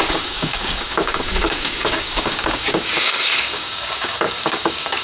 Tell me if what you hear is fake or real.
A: fake